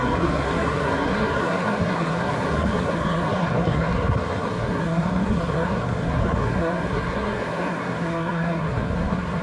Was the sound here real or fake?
fake